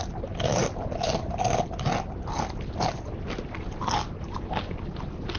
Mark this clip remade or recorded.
recorded